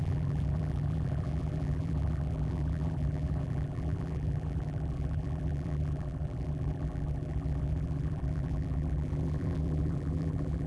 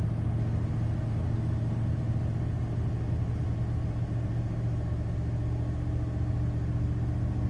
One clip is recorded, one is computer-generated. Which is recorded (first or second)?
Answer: second